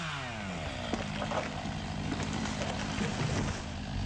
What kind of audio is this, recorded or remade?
recorded